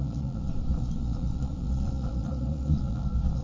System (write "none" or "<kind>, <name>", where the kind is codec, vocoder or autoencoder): vocoder, Vocos